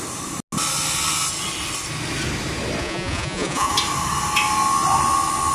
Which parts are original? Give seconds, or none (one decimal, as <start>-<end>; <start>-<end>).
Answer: 0.0-2.8; 3.7-5.5